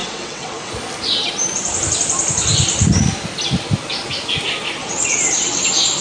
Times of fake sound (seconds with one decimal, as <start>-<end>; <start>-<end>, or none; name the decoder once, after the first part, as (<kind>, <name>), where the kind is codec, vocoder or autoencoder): 0.0-0.7 (vocoder, WaveNeXt); 4.8-5.6